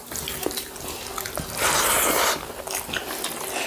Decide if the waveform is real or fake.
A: real